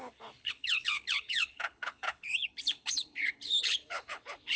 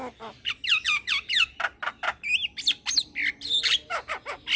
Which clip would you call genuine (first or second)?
second